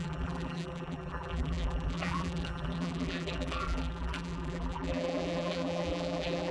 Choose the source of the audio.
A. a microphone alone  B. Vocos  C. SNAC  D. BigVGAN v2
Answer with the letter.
D